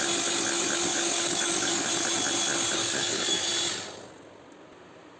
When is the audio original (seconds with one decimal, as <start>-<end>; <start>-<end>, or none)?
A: 0.0-0.9; 1.9-2.8; 3.5-5.2